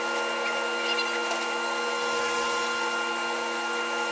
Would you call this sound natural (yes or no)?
yes